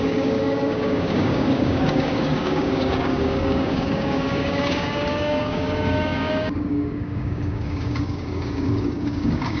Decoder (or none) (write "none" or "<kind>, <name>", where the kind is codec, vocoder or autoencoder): codec, DAC